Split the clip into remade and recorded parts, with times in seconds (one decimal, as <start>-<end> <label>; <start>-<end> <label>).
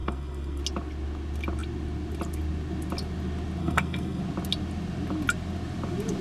0.0-0.6 remade; 0.6-3.6 recorded; 3.6-4.2 remade; 4.2-6.2 recorded